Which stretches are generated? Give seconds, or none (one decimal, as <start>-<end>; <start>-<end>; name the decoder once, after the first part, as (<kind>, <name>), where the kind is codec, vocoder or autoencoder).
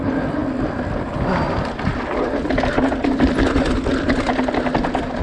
none